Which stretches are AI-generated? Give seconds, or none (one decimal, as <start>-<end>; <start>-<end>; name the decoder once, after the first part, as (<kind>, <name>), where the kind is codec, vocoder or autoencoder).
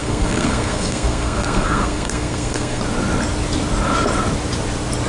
0.0-2.8 (codec, SNAC)